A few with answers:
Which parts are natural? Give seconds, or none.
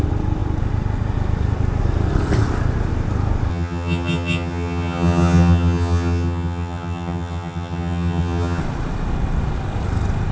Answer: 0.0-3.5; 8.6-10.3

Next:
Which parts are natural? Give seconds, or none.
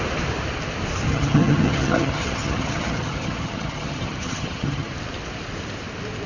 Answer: 0.0-1.1; 4.9-6.3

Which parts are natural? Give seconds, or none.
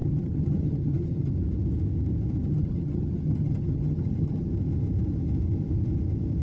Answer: 1.3-2.4; 4.5-6.4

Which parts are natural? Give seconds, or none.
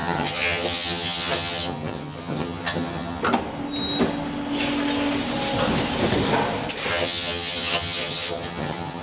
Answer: 3.2-6.9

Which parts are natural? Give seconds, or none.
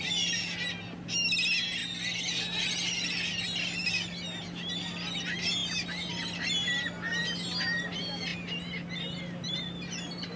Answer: 0.0-10.4